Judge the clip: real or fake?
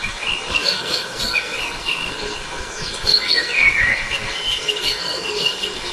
fake